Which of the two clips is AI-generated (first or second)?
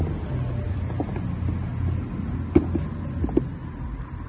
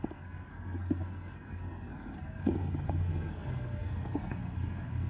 second